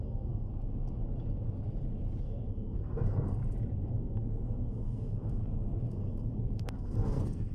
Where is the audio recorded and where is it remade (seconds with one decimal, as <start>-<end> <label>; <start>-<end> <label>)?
0.0-0.5 remade; 0.5-2.2 recorded; 2.2-3.4 remade; 3.4-3.9 recorded; 3.9-5.4 remade; 5.4-5.9 recorded; 5.9-7.5 remade